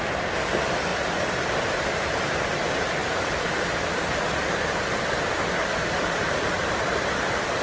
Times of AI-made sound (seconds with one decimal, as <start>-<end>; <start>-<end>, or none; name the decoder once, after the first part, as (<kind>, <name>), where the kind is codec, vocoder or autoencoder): none